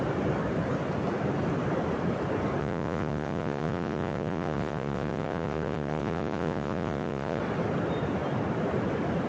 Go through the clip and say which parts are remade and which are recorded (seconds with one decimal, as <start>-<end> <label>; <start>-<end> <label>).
0.0-2.6 recorded; 2.6-7.4 remade; 7.4-9.3 recorded